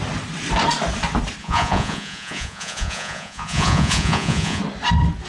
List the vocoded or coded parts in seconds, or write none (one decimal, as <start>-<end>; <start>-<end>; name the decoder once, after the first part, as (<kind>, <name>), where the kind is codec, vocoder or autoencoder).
1.4-4.6 (vocoder, Vocos)